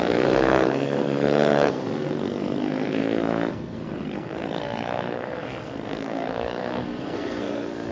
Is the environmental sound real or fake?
fake